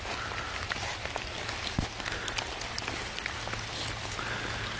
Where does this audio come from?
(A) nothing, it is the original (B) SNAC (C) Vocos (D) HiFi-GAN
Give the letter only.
A